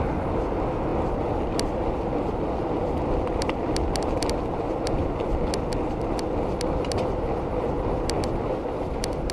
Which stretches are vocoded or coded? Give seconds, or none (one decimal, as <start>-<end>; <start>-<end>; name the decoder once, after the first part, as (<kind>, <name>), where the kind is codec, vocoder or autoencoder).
none